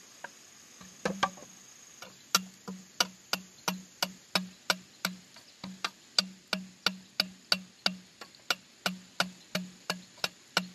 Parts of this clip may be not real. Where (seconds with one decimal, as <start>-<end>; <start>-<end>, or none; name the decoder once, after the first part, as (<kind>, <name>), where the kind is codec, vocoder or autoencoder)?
none

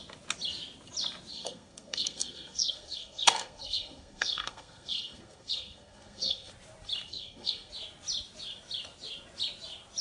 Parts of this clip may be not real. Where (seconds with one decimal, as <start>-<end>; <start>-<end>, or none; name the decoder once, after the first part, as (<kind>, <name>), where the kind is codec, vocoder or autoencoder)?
1.3-6.5 (codec, SNAC); 7.1-7.7

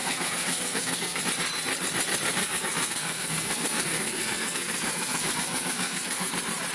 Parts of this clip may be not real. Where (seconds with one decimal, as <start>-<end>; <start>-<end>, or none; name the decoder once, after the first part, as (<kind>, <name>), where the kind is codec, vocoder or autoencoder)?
0.0-1.2 (codec, SNAC); 2.3-6.3

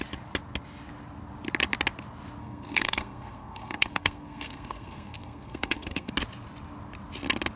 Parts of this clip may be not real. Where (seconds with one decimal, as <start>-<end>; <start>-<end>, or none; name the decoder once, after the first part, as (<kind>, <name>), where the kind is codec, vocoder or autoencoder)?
2.4-6.1 (codec, SNAC)

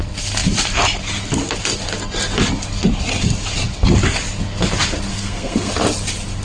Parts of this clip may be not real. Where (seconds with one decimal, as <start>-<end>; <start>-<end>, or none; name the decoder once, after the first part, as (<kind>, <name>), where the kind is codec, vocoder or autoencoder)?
5.1-5.7 (codec, SNAC)

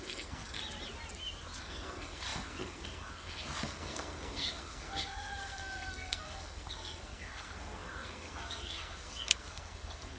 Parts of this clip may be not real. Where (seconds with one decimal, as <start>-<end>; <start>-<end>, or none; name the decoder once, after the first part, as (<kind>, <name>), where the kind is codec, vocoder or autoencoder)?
0.0-0.6 (codec, SNAC); 1.6-10.2